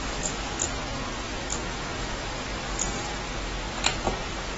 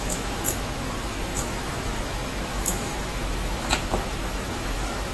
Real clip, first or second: first